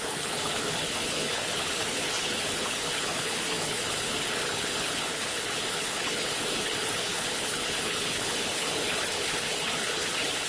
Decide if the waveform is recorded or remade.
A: remade